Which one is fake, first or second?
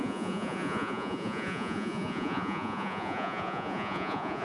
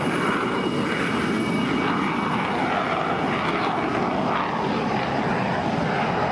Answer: first